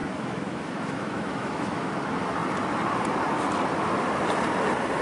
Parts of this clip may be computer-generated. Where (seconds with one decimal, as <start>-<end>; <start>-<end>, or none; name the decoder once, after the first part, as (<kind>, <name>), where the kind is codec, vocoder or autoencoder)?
0.0-1.9 (autoencoder, DAC-VAE)